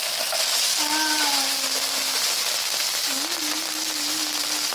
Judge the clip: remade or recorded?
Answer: recorded